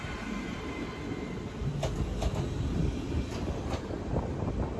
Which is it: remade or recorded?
recorded